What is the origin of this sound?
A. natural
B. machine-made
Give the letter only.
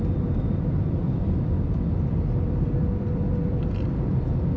B